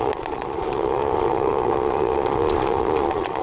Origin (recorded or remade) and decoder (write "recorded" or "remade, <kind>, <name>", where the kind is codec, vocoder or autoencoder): remade, vocoder, Vocos